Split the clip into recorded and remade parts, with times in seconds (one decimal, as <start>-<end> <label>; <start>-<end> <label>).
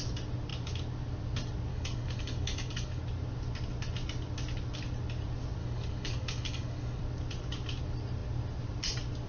0.0-1.7 recorded; 1.7-3.0 remade; 3.0-5.6 recorded; 5.6-7.0 remade; 7.0-9.3 recorded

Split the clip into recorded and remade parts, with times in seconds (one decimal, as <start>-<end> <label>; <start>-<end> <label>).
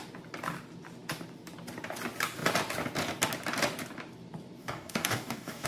0.0-4.6 recorded; 4.6-5.7 remade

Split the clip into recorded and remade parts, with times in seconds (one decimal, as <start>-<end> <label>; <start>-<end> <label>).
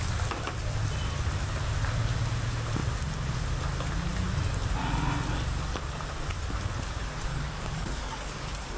0.0-7.3 recorded; 7.3-8.8 remade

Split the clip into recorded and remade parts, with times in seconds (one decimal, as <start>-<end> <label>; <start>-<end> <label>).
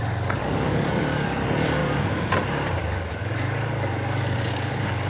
0.0-0.4 recorded; 0.4-0.9 remade; 0.9-1.8 recorded; 1.8-2.3 remade; 2.3-2.8 recorded; 2.8-5.1 remade